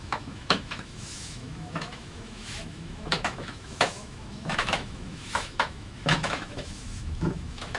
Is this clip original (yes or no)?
no